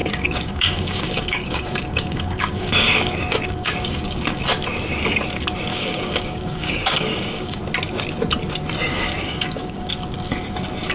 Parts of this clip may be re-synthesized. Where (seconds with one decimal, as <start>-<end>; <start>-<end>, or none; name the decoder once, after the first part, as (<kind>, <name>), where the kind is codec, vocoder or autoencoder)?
0.0-4.4 (codec, DAC); 5.7-7.6; 8.9-9.9